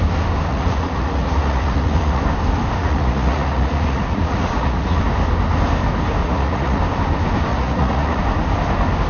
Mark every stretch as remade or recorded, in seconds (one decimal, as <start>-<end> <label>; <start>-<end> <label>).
0.0-0.5 recorded; 0.5-2.2 remade; 2.2-2.8 recorded; 2.8-5.0 remade; 5.0-6.2 recorded; 6.2-6.8 remade; 6.8-7.5 recorded; 7.5-8.2 remade; 8.2-9.1 recorded